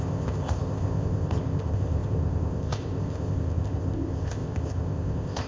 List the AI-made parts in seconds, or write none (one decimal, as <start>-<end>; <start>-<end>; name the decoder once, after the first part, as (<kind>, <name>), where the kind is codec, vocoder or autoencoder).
0.0-5.5 (codec, ZipCodec)